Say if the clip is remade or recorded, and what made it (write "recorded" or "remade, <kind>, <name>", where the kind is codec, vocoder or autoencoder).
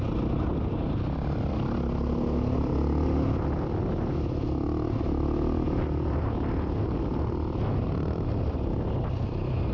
recorded